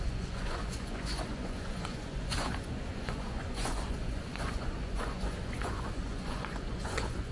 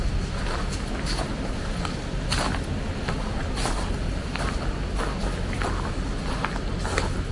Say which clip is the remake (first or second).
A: first